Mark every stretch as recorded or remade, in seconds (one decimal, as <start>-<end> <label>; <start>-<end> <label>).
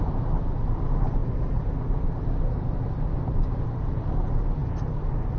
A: 0.0-5.4 recorded